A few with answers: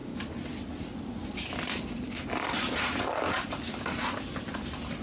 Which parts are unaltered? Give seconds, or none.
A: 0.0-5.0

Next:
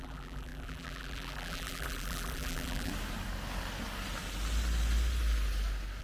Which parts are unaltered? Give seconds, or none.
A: 2.9-6.0

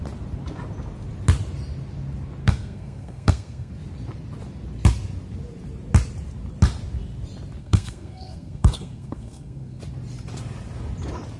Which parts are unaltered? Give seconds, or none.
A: 0.0-2.4; 3.7-7.6; 9.8-11.4

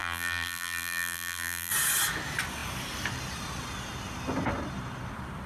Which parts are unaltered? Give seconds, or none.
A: 1.7-5.5

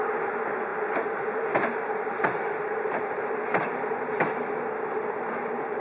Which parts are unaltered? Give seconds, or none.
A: 0.0-0.7; 3.9-5.8

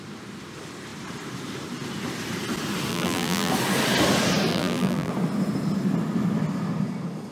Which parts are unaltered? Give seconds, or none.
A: 0.0-2.9; 3.5-4.5; 5.1-7.3